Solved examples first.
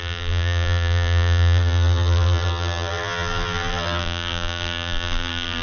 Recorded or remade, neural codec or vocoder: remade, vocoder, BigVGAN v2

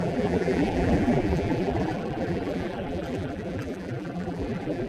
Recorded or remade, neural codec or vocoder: remade, vocoder, BigVGAN v2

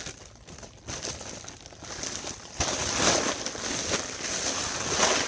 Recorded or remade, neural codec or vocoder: recorded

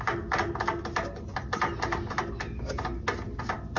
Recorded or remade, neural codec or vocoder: recorded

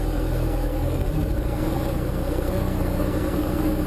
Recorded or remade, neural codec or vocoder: remade, codec, SNAC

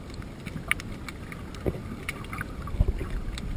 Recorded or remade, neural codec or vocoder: recorded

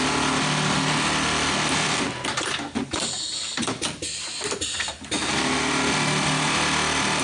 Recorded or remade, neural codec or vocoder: recorded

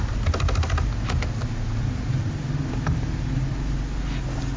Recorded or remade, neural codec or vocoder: recorded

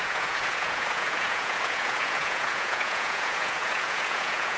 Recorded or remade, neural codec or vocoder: remade, vocoder, Vocos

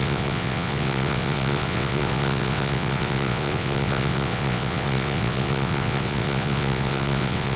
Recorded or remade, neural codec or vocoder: remade, vocoder, WaveNeXt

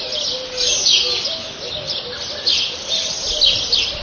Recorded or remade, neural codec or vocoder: recorded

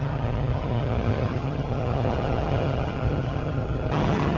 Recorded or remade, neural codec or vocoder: remade, vocoder, HiFi-GAN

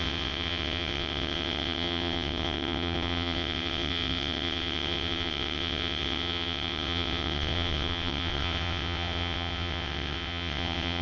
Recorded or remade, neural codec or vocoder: remade, vocoder, WaveNeXt